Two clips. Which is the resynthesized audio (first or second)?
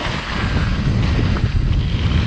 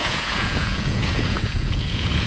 second